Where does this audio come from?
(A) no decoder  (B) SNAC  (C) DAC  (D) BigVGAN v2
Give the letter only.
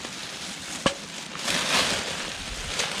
A